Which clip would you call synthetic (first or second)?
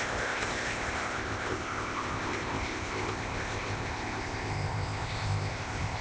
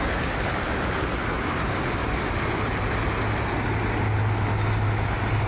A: first